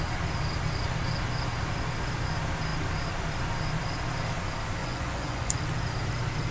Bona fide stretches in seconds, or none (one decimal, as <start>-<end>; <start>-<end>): 0.0-4.8; 5.6-6.5